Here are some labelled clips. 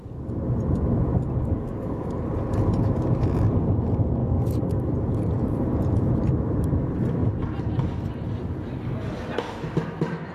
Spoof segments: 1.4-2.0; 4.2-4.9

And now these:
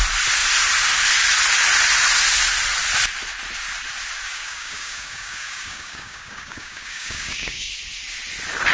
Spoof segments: 4.3-7.7

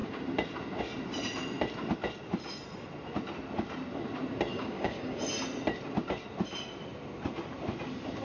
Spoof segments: 4.5-5.2

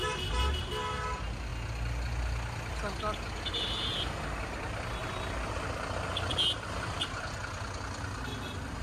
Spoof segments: none

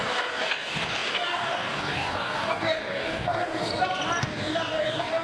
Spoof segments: 0.0-3.7; 4.2-5.2

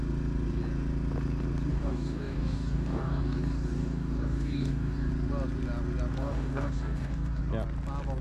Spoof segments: 1.7-5.1; 6.2-7.4

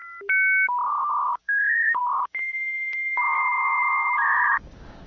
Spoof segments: 0.9-5.1